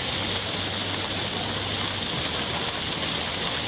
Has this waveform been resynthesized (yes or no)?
no